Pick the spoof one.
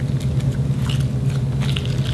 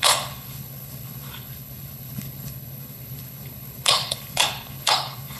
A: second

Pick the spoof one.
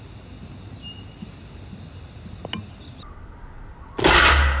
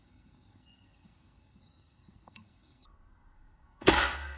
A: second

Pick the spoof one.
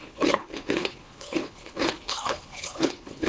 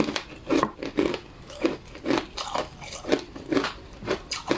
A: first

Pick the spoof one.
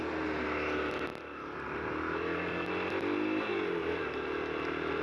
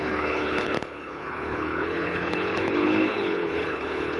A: second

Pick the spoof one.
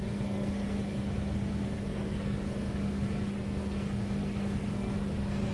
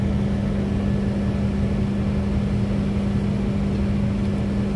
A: first